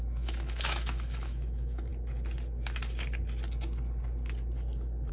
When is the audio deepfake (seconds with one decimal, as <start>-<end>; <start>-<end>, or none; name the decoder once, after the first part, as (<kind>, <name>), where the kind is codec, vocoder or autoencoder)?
0.0-1.9 (autoencoder, DAC-VAE)